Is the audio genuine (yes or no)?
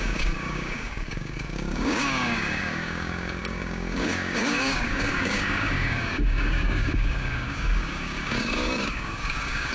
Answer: no